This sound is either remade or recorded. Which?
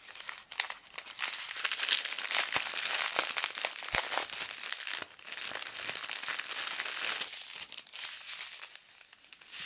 recorded